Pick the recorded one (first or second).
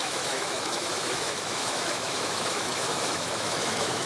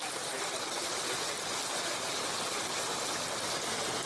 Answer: second